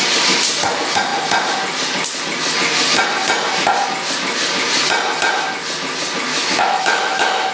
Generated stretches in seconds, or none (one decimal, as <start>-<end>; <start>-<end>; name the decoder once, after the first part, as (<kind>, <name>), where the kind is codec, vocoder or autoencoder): 6.3-7.5 (autoencoder, DAC-VAE)